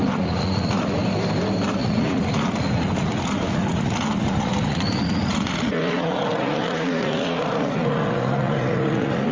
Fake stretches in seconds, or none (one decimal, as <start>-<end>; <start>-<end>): 0.0-1.0; 1.8-9.3